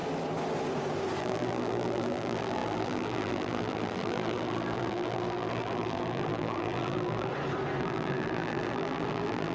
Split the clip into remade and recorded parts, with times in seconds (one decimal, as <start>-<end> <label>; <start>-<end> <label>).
0.0-1.2 recorded; 1.2-7.3 remade; 7.3-7.8 recorded; 7.8-9.5 remade